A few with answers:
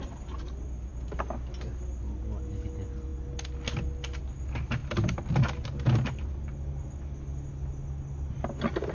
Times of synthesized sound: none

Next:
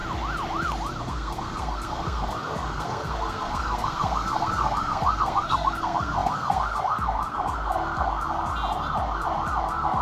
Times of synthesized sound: 1.0-8.5 (codec, SNAC); 9.6-10.0

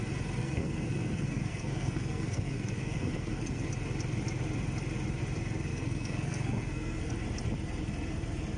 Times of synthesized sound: 0.4-3.7 (codec, SNAC); 5.7-7.1

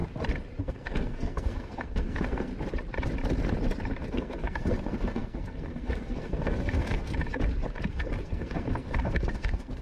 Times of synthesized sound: 0.6-2.5 (codec, SNAC); 4.0-7.1; 7.9-9.8

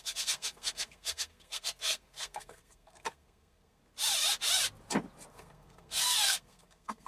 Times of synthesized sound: 0.0-3.8 (codec, SNAC); 5.3-7.1